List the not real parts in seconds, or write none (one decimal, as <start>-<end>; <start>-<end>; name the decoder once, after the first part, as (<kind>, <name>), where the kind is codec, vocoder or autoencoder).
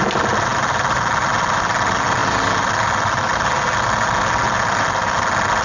none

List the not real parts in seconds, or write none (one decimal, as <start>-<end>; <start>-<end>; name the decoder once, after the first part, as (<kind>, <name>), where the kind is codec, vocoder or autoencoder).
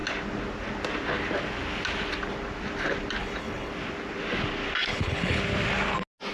3.2-3.7 (codec, HILCodec); 4.9-5.4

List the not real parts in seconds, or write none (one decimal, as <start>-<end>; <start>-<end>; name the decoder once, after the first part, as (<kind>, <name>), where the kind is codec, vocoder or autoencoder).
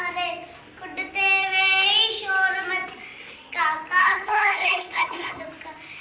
4.0-5.4 (codec, HILCodec)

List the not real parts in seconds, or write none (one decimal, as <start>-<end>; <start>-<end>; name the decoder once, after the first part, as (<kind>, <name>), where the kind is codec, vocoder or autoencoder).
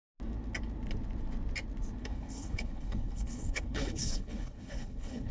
2.0-5.3 (codec, HILCodec)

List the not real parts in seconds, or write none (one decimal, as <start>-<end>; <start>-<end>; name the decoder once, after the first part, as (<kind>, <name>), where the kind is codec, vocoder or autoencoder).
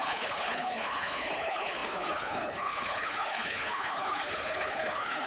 0.0-5.3 (codec, HILCodec)